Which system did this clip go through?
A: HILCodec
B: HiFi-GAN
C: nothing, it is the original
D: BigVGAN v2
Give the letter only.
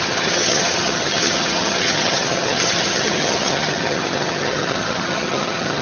B